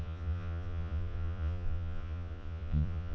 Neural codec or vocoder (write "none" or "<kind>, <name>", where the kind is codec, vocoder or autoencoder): vocoder, Vocos